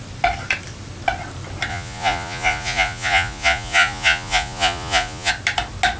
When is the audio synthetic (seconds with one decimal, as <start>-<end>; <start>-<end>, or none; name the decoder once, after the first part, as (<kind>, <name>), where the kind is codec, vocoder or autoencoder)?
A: 1.7-5.3 (vocoder, Vocos)